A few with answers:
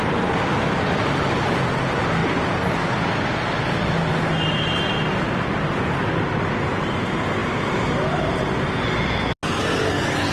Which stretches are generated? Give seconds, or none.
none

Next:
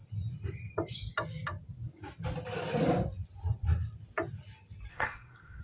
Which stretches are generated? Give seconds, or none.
4.9-5.6 (codec, SNAC)

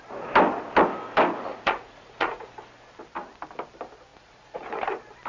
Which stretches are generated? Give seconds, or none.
1.5-2.5 (vocoder, Vocos); 4.1-4.8

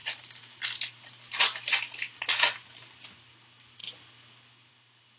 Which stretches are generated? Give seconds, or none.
none

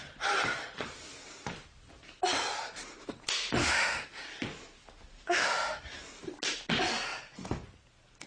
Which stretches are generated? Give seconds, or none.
3.6-4.2 (autoencoder, DAC-VAE); 5.1-5.8

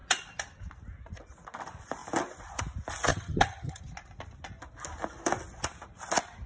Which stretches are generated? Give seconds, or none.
3.1-3.8 (vocoder, HiFi-GAN)

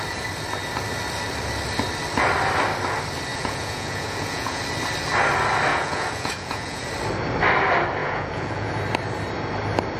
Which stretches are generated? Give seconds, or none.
3.3-4.6 (vocoder, Vocos); 5.7-6.9; 8.0-8.7